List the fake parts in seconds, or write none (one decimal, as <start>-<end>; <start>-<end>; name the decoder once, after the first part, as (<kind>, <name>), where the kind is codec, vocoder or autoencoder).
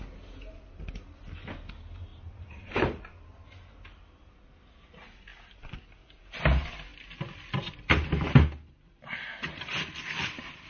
2.1-3.0 (vocoder, BigVGAN v2)